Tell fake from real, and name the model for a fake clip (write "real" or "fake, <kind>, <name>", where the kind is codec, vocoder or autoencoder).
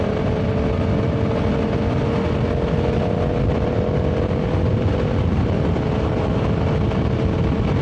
real